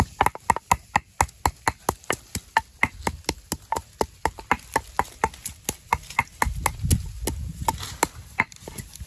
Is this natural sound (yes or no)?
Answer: yes